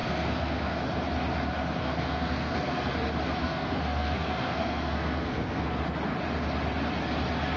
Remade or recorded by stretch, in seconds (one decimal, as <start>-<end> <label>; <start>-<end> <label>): 0.0-0.8 remade; 0.8-1.8 recorded; 1.8-2.9 remade; 2.9-3.4 recorded; 3.4-5.8 remade; 5.8-7.6 recorded